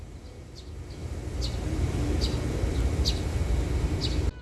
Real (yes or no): yes